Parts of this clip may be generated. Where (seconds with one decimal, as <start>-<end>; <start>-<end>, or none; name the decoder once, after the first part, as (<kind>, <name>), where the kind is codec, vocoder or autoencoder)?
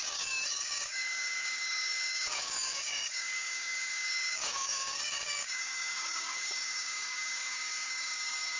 0.0-8.6 (codec, DAC)